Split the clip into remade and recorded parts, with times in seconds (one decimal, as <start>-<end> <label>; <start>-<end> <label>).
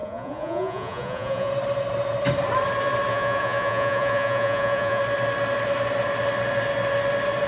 0.0-1.5 remade; 1.5-3.1 recorded; 3.1-5.0 remade; 5.0-7.5 recorded